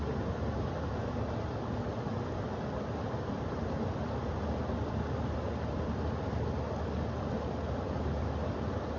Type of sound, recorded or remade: recorded